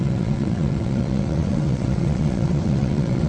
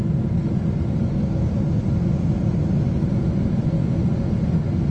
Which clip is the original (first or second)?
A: second